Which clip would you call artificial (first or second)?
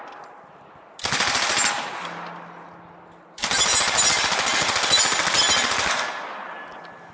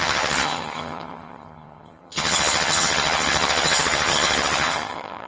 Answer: second